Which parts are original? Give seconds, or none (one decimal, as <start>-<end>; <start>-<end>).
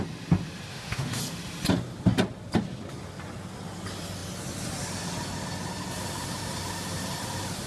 0.0-0.7; 1.2-7.7